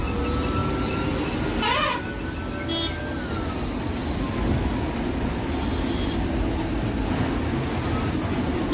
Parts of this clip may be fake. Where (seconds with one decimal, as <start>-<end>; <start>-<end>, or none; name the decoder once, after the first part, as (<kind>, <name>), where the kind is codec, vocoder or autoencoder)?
none